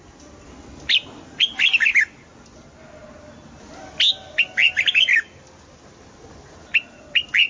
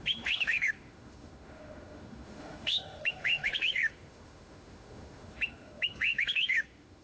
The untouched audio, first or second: first